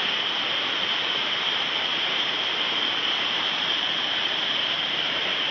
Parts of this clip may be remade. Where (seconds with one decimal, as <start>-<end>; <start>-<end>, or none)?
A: 1.9-5.5